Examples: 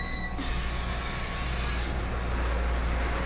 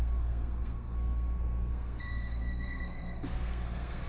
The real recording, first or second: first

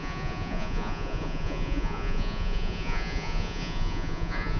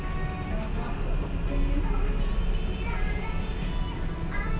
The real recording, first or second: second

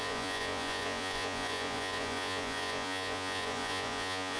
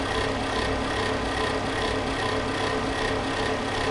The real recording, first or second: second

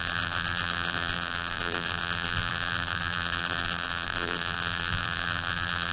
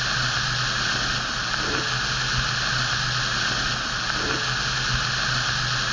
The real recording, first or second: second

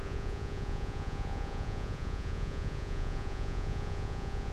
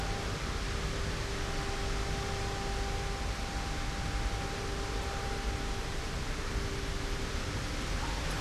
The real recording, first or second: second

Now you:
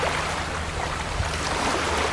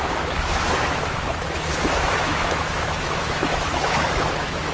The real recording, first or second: first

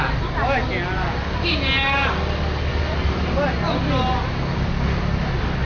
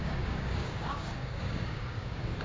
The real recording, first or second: first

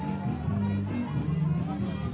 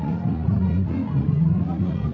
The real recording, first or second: first